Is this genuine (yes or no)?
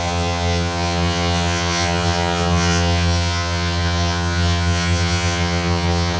no